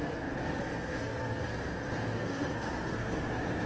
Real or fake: fake